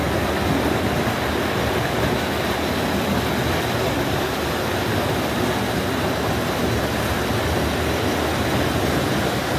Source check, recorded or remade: recorded